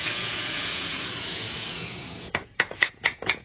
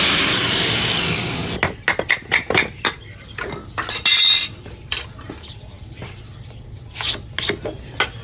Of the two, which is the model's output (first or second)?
first